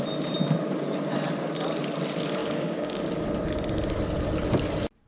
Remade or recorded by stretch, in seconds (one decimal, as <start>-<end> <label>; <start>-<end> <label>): 0.0-2.4 recorded; 2.4-3.0 remade; 3.0-5.1 recorded